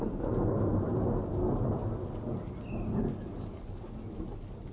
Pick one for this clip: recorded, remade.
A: recorded